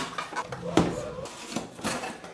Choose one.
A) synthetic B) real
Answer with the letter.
B